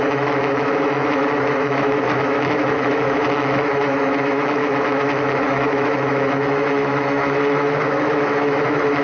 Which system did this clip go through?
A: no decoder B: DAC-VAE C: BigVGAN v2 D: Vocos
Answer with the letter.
B